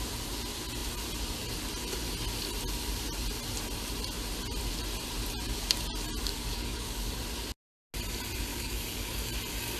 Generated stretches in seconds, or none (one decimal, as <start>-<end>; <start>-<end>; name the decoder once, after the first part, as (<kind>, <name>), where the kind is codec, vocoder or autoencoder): 6.3-7.1 (codec, DAC); 8.5-9.1

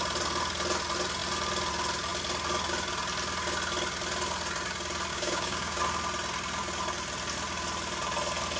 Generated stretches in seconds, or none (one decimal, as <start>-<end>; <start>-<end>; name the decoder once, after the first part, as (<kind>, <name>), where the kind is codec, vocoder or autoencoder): 5.1-5.8 (codec, DAC)

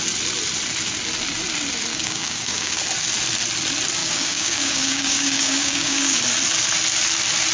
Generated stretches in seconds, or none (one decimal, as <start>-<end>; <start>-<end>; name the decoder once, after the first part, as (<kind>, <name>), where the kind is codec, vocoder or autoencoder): 1.9-2.8 (codec, DAC); 4.0-6.2